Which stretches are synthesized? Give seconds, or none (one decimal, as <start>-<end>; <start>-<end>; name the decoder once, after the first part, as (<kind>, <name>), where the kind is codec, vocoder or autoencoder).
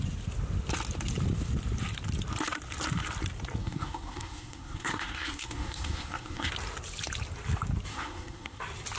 3.6-6.5 (codec, SNAC); 7.9-8.6